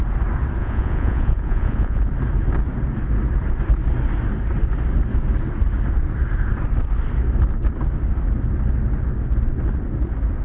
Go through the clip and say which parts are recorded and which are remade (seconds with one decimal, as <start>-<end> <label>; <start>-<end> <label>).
0.0-0.6 recorded; 0.6-2.1 remade; 2.1-10.4 recorded